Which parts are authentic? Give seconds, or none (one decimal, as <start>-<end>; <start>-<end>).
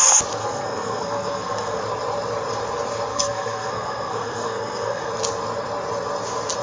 0.0-0.4; 1.8-3.1; 5.1-6.6